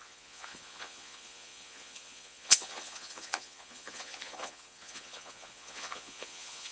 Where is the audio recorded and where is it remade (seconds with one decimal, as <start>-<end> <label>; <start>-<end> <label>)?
0.0-6.7 remade